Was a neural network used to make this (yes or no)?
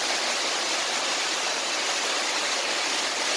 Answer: no